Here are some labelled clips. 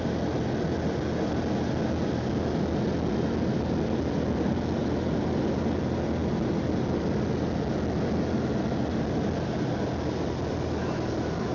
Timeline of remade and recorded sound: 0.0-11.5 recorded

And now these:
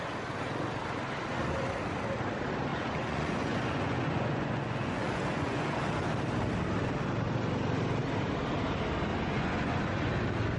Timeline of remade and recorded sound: 0.0-2.7 recorded; 2.7-6.1 remade; 6.1-9.1 recorded; 9.1-10.1 remade; 10.1-10.6 recorded